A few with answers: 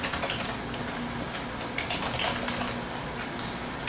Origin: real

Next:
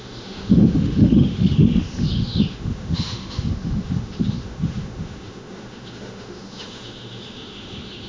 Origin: fake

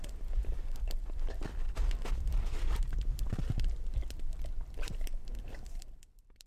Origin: fake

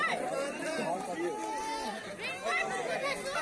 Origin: real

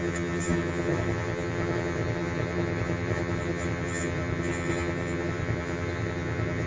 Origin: fake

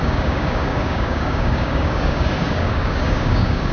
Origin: fake